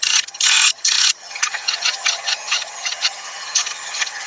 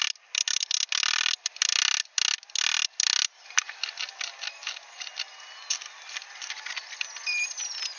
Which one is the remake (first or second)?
first